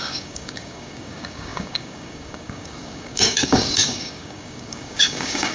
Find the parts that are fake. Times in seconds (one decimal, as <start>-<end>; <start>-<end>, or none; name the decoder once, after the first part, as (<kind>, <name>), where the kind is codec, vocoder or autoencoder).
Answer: 0.0-5.5 (codec, DAC)